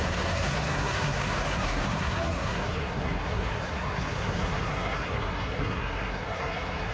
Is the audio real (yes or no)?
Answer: no